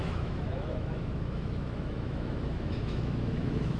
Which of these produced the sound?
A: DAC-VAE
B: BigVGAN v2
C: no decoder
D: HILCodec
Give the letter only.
A